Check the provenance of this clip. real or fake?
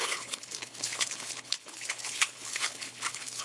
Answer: fake